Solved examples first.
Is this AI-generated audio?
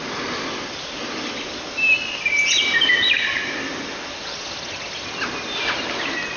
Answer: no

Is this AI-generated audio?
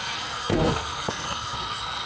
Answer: yes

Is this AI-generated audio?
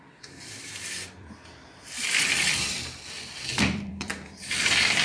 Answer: yes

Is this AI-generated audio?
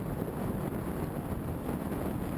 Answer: no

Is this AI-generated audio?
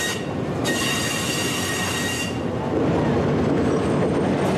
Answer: no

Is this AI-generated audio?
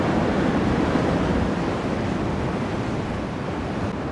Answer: no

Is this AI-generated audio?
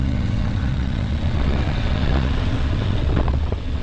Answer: yes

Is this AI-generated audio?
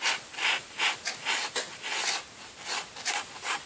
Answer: no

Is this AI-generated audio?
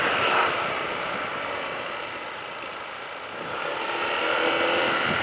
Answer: no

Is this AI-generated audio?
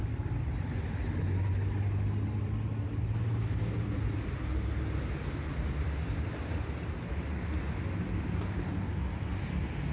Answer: no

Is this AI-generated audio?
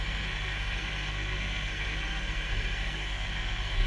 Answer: yes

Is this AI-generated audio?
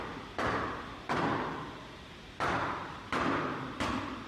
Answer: no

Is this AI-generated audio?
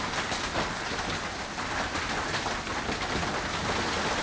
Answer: no